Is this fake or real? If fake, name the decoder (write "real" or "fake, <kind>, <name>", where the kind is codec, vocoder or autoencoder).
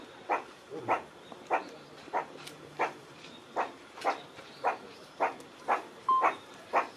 fake, vocoder, BigVGAN v2